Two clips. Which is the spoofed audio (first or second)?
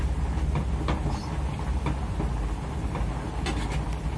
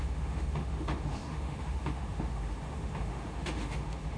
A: second